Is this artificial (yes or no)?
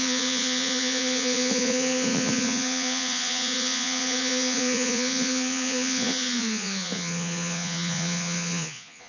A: yes